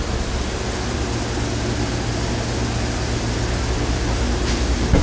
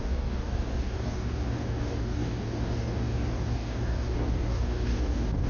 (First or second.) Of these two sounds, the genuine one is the first